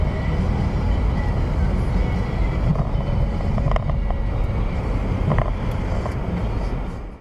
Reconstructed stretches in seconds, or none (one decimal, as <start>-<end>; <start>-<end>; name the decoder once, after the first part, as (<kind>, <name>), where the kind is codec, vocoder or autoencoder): none